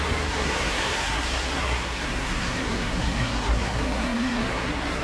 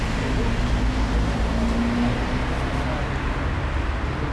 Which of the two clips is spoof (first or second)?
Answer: first